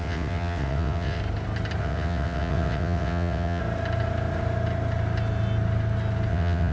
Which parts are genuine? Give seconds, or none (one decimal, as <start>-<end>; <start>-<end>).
1.2-1.8; 3.6-6.3